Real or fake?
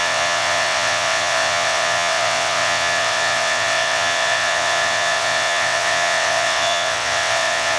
fake